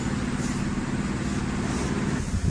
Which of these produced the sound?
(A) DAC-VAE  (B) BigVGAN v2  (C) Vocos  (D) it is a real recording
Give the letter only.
D